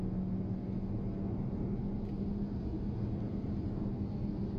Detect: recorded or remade recorded